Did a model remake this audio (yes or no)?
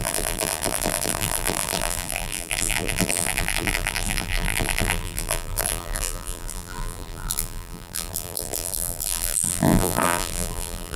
yes